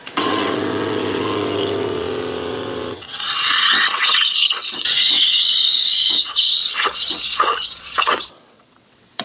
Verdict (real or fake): fake